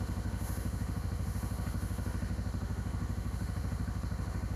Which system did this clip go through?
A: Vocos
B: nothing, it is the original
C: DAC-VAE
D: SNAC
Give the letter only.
C